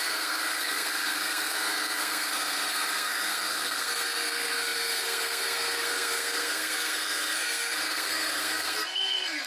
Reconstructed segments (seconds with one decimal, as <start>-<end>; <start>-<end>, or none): 0.0-9.5